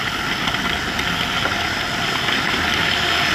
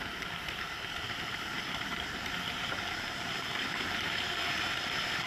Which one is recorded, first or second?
first